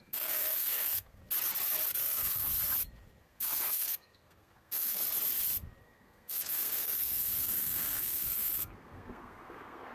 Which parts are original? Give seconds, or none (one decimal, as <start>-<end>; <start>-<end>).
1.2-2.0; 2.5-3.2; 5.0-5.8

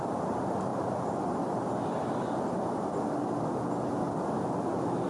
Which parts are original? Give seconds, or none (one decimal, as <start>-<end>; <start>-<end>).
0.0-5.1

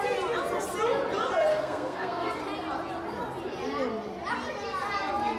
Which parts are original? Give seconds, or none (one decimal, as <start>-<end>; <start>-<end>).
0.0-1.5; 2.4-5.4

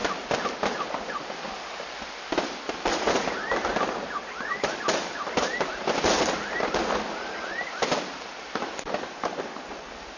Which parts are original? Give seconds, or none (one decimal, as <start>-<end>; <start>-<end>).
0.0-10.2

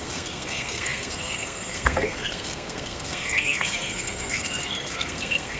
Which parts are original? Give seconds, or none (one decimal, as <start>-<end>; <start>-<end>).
none